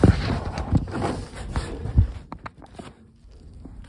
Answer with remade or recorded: recorded